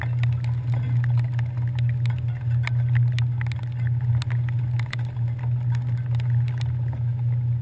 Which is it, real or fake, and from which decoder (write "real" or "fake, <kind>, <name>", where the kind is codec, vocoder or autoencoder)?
real